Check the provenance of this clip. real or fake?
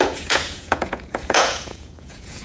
fake